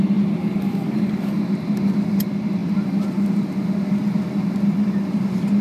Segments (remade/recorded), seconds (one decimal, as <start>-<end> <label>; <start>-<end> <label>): 0.0-0.4 recorded; 0.4-1.4 remade; 1.4-5.6 recorded